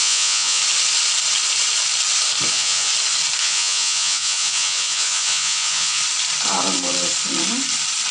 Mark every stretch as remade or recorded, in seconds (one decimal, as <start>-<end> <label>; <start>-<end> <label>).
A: 0.0-0.6 remade; 0.6-2.5 recorded; 2.5-2.9 remade; 2.9-3.4 recorded; 3.4-6.0 remade; 6.0-8.1 recorded